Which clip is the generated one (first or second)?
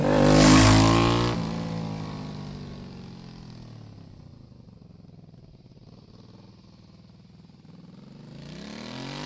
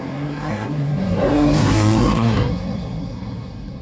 second